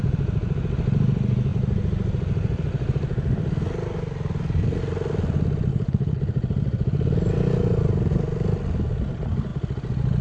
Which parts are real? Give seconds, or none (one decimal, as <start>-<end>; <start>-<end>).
0.0-5.7; 6.2-10.2